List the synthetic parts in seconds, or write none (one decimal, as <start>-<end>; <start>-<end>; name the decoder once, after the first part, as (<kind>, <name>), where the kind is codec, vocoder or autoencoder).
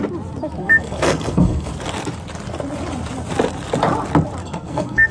0.6-1.7 (codec, SNAC); 4.4-5.1